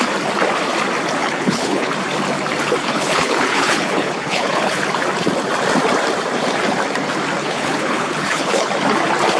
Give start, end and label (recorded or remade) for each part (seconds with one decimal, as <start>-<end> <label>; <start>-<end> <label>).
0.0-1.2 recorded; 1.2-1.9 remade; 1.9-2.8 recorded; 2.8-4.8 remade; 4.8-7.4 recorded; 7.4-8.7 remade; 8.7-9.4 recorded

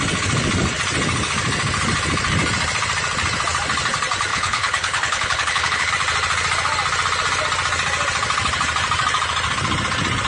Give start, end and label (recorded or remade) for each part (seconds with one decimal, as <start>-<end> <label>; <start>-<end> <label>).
0.0-4.3 recorded; 4.3-5.9 remade; 5.9-10.3 recorded

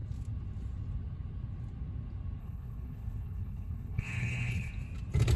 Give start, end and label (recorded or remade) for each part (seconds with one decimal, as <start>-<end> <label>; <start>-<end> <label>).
0.0-2.4 recorded; 2.4-4.7 remade; 4.7-5.4 recorded

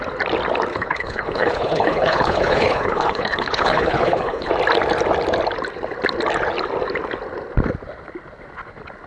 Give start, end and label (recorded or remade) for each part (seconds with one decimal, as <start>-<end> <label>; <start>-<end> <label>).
0.0-0.7 recorded; 0.7-4.5 remade; 4.5-9.1 recorded

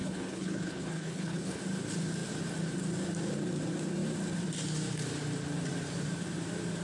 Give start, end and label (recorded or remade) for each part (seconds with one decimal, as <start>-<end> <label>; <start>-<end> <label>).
0.0-1.6 remade; 1.6-6.8 recorded

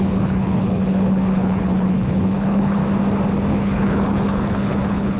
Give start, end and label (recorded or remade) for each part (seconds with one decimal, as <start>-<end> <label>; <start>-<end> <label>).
0.0-2.8 remade; 2.8-3.5 recorded; 3.5-5.2 remade